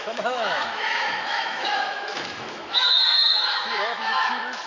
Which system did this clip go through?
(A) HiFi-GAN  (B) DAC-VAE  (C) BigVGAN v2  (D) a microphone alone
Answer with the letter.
B